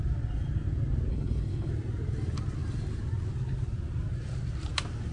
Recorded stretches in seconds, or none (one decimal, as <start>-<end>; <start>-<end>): 0.0-1.1; 1.7-5.1